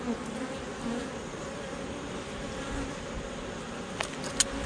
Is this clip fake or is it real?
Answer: real